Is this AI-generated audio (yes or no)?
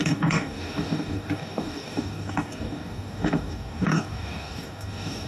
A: yes